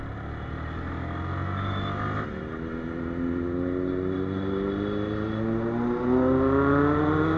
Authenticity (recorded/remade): recorded